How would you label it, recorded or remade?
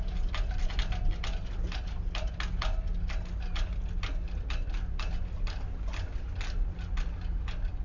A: recorded